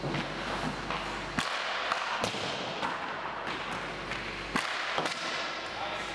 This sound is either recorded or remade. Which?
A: recorded